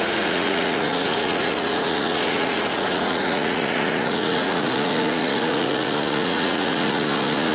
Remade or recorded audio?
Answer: remade